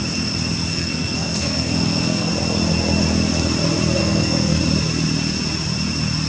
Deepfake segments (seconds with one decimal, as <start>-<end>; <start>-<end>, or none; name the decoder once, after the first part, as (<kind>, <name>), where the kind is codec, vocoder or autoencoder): 0.7-2.3 (codec, SNAC); 4.0-4.6